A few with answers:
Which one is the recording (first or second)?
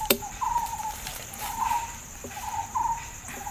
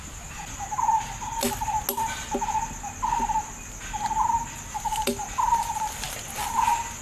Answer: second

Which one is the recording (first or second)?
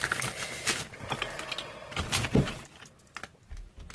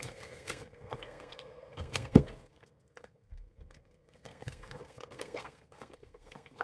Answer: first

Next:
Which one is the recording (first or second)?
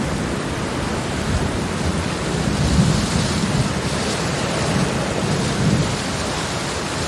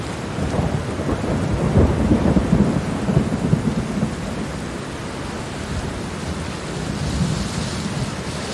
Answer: second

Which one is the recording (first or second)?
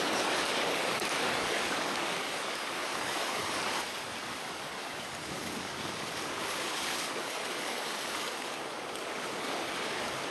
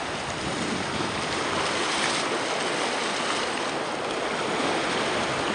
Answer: second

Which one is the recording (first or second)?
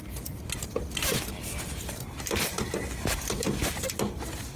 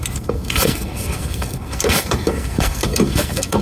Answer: first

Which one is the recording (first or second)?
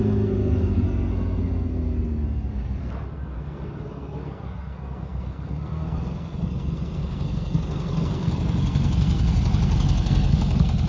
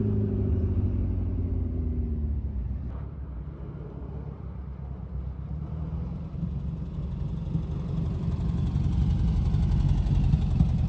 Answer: second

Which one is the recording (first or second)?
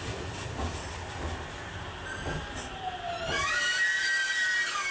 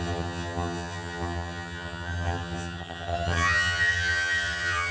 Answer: first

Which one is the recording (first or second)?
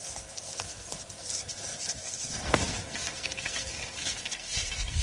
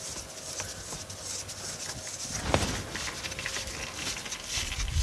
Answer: second